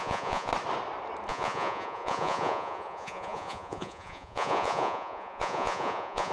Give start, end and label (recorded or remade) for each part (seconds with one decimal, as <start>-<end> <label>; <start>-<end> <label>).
0.0-0.5 remade; 0.5-1.3 recorded; 1.3-6.3 remade